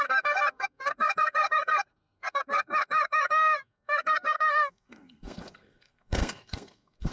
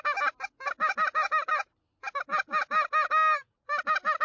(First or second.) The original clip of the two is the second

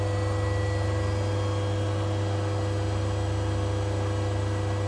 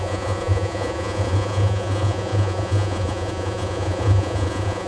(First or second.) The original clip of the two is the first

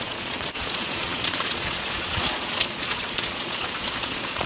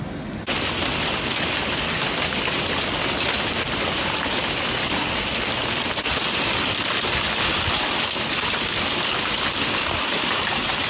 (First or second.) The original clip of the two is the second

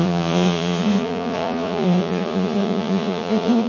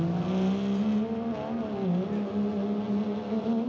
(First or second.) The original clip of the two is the second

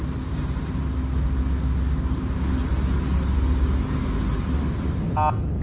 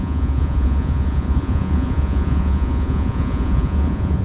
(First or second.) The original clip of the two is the first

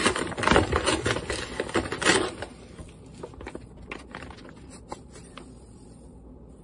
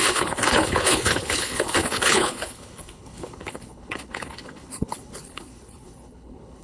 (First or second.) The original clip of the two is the first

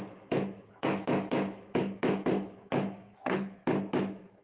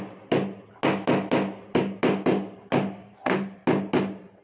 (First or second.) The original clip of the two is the second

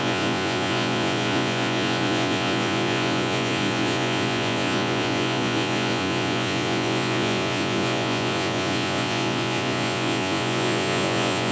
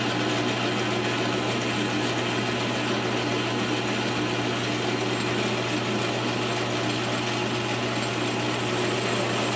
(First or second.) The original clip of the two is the second